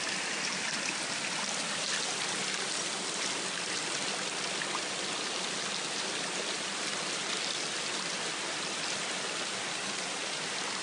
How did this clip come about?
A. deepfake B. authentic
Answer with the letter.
B